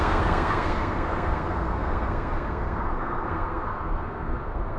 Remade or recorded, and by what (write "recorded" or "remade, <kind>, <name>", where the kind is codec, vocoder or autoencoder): remade, codec, SNAC